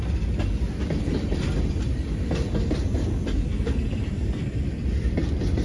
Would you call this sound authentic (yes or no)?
yes